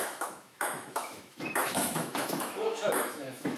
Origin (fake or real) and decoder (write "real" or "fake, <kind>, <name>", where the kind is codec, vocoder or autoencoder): fake, autoencoder, DAC-VAE